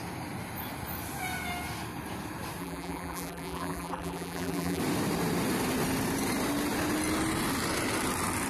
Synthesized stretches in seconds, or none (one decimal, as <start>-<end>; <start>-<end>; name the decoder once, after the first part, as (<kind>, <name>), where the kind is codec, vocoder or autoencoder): 2.6-4.8 (vocoder, BigVGAN v2)